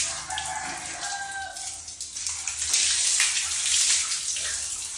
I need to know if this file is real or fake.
real